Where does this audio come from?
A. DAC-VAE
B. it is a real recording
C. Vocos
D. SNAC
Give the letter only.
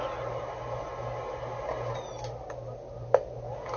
B